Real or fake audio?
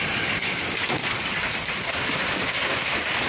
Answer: real